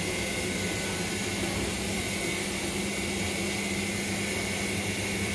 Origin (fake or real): real